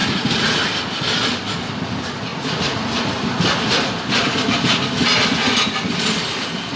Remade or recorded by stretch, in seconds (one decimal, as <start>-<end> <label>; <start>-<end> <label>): 0.0-0.6 remade; 0.6-2.3 recorded; 2.3-3.1 remade; 3.1-6.8 recorded